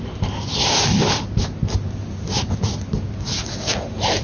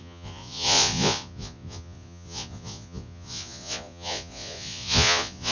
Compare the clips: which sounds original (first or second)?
first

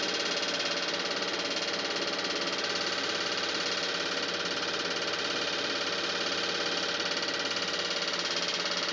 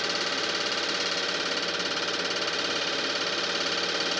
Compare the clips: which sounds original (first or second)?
first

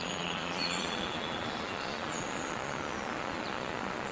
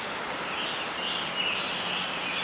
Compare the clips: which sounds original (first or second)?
second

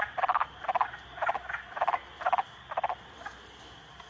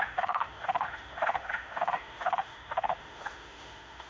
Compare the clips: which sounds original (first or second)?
first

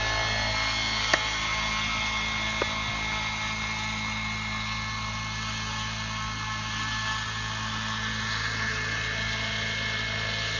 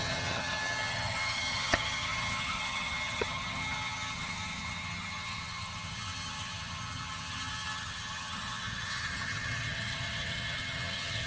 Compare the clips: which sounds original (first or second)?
first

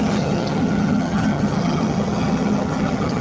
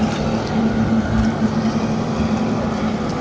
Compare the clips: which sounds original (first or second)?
second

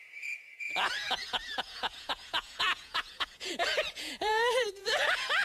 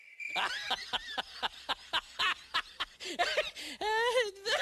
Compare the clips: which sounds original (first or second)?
second